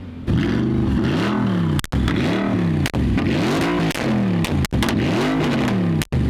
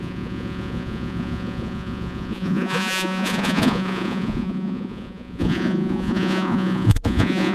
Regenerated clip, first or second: second